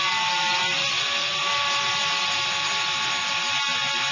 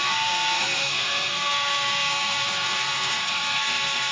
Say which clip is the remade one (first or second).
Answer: second